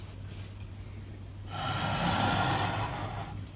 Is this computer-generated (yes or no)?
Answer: no